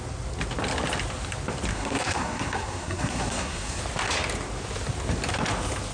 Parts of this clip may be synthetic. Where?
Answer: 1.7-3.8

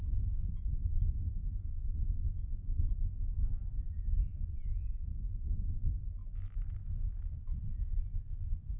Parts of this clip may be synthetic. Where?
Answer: 5.1-5.7

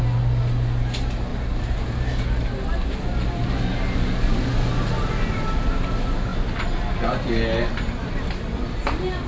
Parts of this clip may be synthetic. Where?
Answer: 1.3-2.2

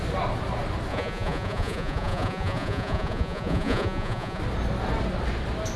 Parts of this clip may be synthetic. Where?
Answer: 0.9-4.4